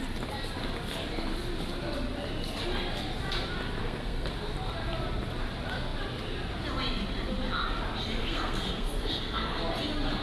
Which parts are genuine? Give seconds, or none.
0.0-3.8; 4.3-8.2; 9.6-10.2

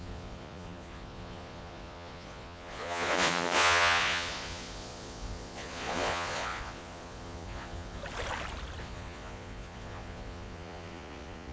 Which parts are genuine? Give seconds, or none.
8.0-8.8

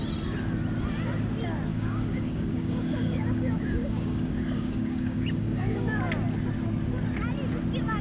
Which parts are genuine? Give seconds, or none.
0.0-1.7; 6.0-8.0

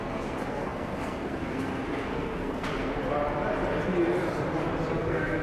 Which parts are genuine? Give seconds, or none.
3.0-5.0